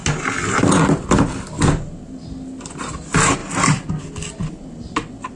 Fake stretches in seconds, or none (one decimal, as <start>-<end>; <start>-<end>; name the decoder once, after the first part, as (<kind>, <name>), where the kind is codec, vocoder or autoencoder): none